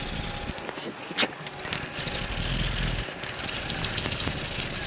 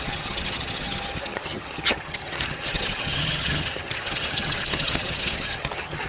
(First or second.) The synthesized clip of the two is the second